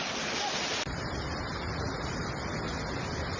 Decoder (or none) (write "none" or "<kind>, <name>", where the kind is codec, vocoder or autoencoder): none